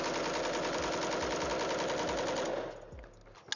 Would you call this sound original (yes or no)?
yes